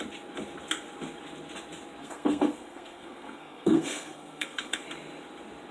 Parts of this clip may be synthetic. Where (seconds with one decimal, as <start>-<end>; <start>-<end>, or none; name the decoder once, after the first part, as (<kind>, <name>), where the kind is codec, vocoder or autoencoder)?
2.0-4.8 (codec, SNAC)